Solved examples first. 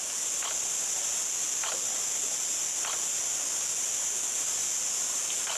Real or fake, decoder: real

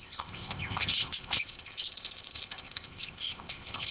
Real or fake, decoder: fake, codec, ZipCodec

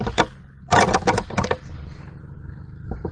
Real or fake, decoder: real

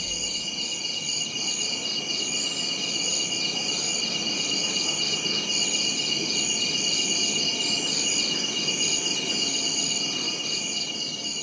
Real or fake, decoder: real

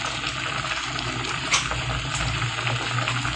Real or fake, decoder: real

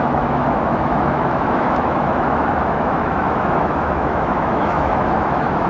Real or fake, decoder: fake, autoencoder, DAC-VAE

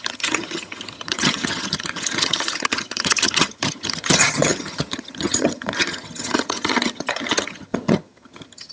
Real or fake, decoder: fake, vocoder, HiFi-GAN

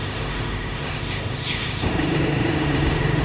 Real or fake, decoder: fake, autoencoder, DAC-VAE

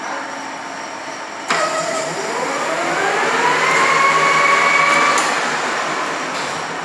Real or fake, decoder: real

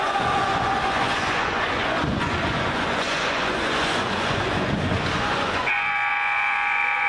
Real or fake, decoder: fake, vocoder, Vocos